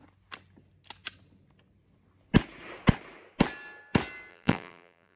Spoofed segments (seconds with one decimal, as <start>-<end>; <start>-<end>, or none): 4.3-5.2